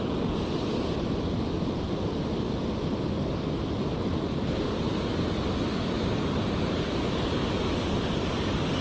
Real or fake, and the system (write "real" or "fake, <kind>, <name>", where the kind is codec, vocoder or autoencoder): real